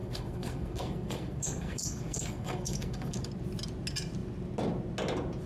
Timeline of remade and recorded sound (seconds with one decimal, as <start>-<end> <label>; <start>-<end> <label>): 0.0-3.3 remade; 3.3-5.5 recorded